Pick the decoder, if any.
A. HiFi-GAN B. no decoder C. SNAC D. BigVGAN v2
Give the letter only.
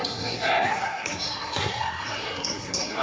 C